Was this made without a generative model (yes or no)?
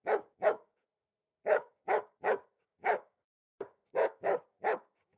no